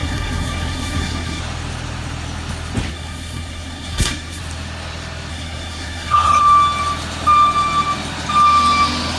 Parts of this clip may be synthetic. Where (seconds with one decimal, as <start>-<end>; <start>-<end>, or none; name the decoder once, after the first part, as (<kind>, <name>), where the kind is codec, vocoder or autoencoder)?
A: 0.0-1.4 (codec, SNAC); 2.9-4.4; 5.3-6.4